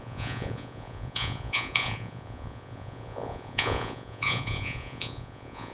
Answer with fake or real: fake